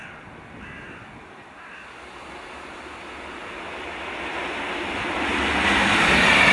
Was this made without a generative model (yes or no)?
yes